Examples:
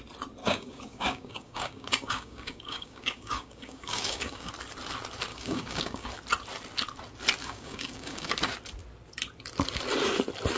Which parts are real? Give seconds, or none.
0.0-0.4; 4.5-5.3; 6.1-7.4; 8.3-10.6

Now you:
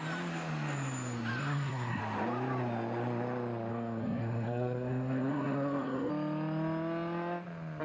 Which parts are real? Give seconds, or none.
0.0-1.4; 2.0-3.7; 6.1-7.8

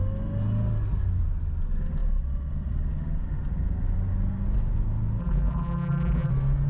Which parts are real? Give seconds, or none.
0.0-5.2; 6.3-6.7

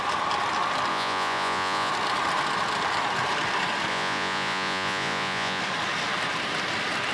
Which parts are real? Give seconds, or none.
0.0-0.9; 1.9-3.9; 5.6-7.1

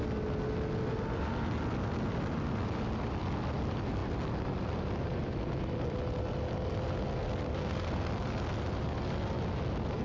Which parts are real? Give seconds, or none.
0.0-7.5; 8.1-10.0

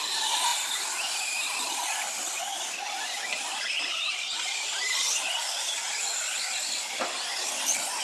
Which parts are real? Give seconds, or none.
0.0-8.0